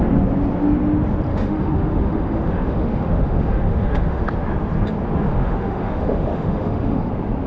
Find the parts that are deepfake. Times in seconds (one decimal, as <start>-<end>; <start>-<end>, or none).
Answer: 1.3-4.2; 5.3-7.1